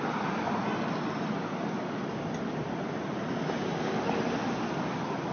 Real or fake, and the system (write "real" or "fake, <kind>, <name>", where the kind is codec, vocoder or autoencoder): real